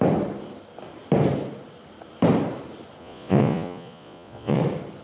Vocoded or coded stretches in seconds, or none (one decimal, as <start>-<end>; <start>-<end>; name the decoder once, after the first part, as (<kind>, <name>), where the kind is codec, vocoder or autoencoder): 3.0-4.6 (vocoder, Vocos)